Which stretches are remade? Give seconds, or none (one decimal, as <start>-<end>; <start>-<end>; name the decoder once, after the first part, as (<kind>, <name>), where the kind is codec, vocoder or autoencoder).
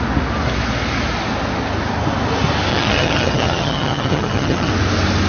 2.7-4.7 (vocoder, HiFi-GAN)